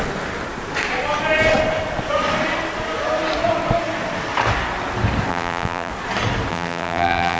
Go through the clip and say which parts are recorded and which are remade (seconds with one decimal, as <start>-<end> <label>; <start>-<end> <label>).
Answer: 0.0-5.3 recorded; 5.3-5.9 remade; 5.9-6.5 recorded; 6.5-7.4 remade